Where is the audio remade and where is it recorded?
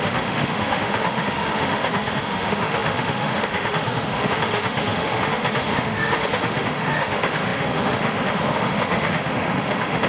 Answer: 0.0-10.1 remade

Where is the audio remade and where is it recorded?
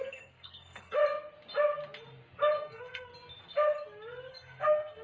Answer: 0.0-1.0 remade; 1.0-2.6 recorded; 2.6-3.1 remade; 3.1-4.3 recorded; 4.3-5.0 remade